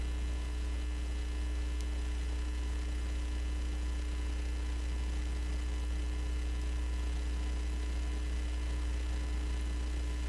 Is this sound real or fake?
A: real